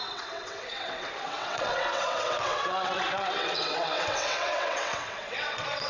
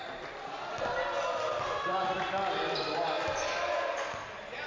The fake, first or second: first